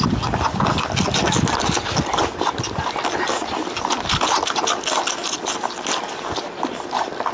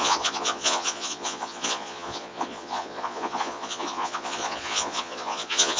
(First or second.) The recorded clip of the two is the first